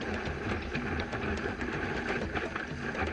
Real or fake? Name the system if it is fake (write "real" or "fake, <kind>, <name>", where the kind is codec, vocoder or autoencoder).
fake, vocoder, BigVGAN v2